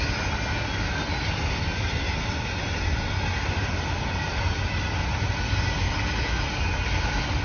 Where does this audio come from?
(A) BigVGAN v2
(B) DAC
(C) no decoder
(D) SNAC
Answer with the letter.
C